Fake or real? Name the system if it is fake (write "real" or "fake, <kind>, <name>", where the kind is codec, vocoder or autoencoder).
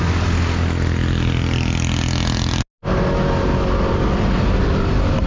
real